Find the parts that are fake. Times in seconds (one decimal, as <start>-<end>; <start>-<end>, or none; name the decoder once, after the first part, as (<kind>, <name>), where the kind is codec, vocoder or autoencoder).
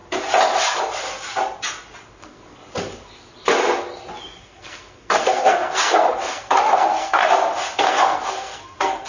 2.2-2.6 (codec, SNAC); 4.4-7.2; 7.8-9.1